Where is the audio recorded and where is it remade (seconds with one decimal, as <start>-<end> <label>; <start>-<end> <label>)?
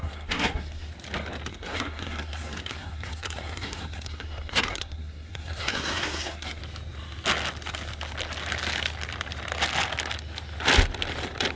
0.0-0.9 remade; 0.9-1.5 recorded; 1.5-6.6 remade; 6.6-11.6 recorded